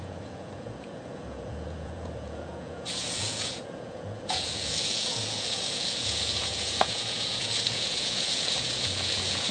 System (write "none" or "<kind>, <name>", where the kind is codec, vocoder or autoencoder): vocoder, Vocos